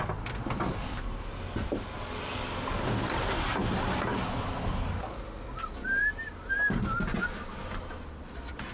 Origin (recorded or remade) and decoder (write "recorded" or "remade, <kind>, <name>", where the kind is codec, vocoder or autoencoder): recorded